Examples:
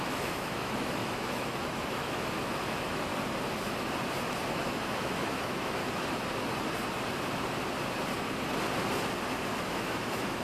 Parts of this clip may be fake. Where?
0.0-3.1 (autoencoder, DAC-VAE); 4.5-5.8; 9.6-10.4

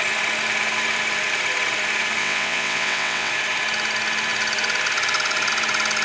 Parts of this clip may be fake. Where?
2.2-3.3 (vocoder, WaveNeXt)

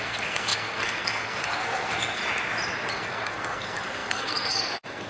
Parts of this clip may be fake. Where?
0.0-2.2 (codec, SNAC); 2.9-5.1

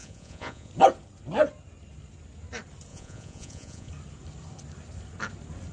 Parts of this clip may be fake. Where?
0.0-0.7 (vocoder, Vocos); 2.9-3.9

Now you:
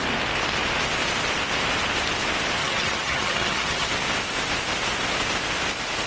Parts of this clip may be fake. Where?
2.6-3.9 (vocoder, HiFi-GAN)